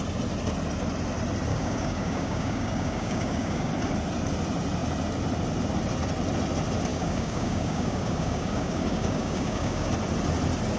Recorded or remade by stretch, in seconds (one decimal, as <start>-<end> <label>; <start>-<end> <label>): 0.0-1.5 recorded; 1.5-3.7 remade; 3.7-6.9 recorded; 6.9-9.9 remade; 9.9-10.8 recorded